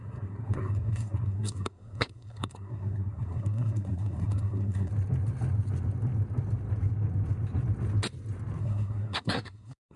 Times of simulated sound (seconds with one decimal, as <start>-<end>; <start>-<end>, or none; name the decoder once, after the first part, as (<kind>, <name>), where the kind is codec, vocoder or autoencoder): 0.0-4.9 (codec, SNAC); 8.6-10.0